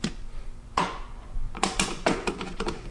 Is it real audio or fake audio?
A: fake